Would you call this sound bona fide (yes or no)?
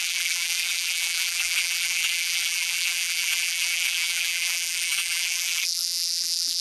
no